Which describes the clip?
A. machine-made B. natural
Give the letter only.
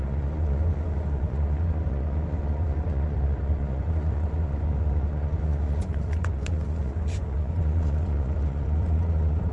A